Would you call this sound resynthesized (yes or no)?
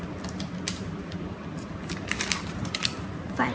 no